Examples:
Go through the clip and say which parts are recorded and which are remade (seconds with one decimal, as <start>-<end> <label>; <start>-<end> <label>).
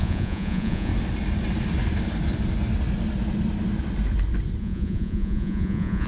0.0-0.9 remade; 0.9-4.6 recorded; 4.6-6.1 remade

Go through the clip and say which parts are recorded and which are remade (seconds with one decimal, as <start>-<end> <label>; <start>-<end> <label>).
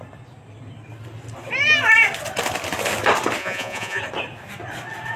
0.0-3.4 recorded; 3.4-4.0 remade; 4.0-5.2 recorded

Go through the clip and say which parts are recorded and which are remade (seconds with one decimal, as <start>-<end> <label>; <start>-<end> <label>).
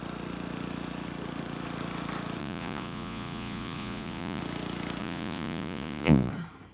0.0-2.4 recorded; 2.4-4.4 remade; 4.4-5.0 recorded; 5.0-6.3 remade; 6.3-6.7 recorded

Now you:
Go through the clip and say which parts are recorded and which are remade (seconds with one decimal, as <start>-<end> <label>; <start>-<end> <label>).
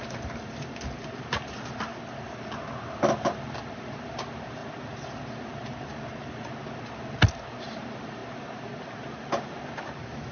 0.0-1.9 remade; 1.9-3.2 recorded; 3.2-4.6 remade; 4.6-7.3 recorded; 7.3-8.2 remade; 8.2-8.9 recorded; 8.9-10.3 remade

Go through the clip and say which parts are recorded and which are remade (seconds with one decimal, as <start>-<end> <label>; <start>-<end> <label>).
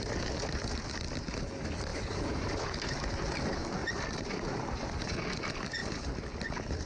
0.0-1.9 recorded; 1.9-3.1 remade; 3.1-3.8 recorded; 3.8-4.9 remade; 4.9-6.9 recorded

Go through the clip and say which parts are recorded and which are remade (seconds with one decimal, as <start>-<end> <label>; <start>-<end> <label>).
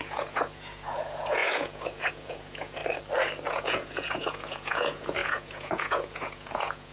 0.0-2.8 remade; 2.8-3.5 recorded; 3.5-6.9 remade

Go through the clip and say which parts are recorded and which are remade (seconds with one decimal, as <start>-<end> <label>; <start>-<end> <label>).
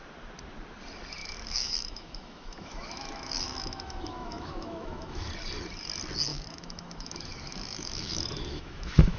0.0-1.2 recorded; 1.2-5.3 remade; 5.3-6.3 recorded; 6.3-9.2 remade